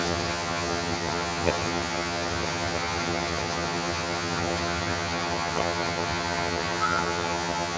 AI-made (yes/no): yes